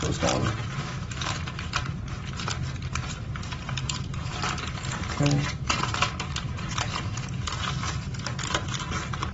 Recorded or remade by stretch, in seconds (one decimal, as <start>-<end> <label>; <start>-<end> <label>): 0.0-0.8 recorded; 0.8-1.5 remade; 1.5-9.3 recorded